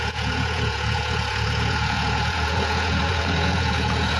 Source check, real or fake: fake